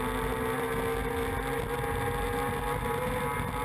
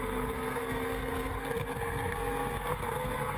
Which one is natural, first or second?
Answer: first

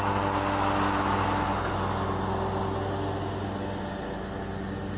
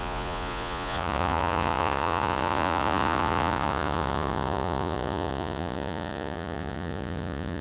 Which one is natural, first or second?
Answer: first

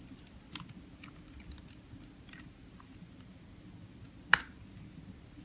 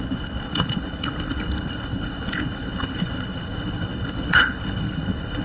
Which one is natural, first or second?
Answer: first